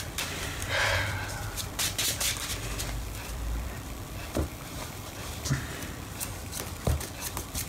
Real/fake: fake